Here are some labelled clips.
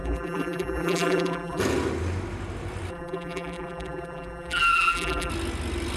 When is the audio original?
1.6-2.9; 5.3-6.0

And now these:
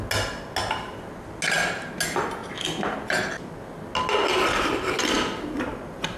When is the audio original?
0.0-6.2

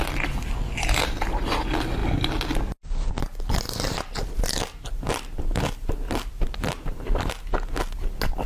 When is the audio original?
0.0-8.5

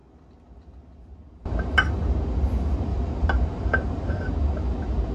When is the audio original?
0.0-2.9; 4.3-5.1